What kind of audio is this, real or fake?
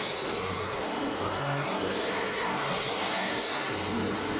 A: fake